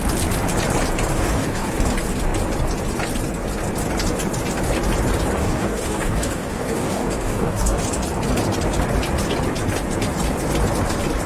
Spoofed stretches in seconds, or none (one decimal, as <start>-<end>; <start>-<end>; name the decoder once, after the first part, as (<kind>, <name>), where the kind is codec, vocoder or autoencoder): 1.1-1.7 (codec, DAC); 5.4-7.8